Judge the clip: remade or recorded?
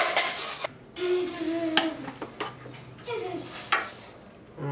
recorded